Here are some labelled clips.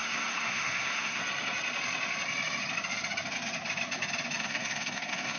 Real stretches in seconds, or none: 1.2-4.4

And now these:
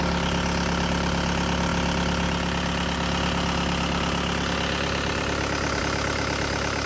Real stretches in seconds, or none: 0.0-6.9

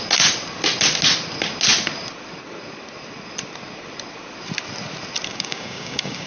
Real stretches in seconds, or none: 0.0-5.3

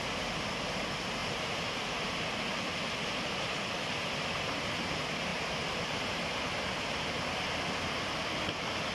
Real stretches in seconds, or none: 0.0-1.2; 2.1-5.3; 6.4-8.9

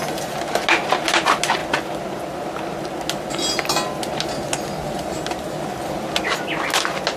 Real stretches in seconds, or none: 0.0-7.2